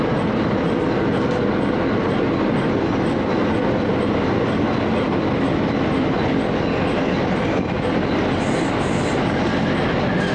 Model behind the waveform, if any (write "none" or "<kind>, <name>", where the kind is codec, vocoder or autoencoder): none